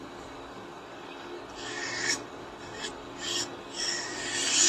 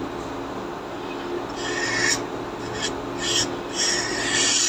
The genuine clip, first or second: second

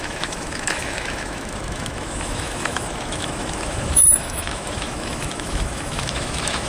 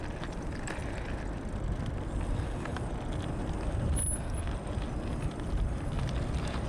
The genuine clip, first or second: second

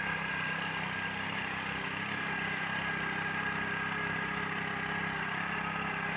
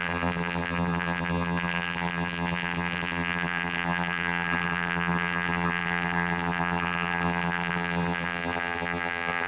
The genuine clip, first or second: first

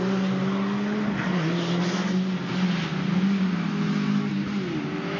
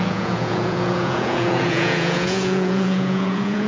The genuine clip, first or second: first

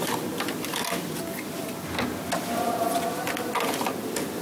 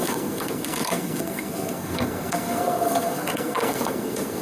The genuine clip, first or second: first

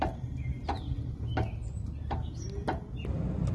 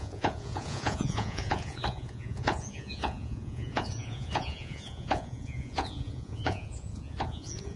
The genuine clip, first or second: first